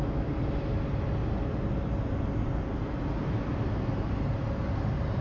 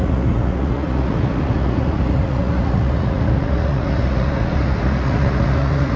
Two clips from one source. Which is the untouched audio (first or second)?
first